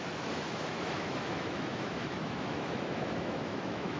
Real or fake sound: fake